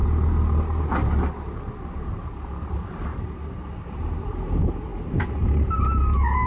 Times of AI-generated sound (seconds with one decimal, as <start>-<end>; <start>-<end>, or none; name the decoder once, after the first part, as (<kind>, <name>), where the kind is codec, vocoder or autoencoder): none